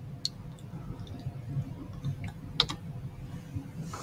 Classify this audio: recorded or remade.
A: recorded